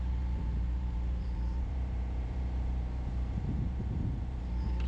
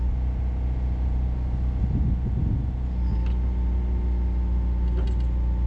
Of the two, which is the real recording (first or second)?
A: second